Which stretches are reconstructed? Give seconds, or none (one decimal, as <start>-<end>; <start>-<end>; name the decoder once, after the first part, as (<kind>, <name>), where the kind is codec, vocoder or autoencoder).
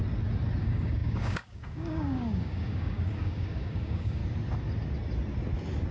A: 0.6-4.2 (codec, DAC)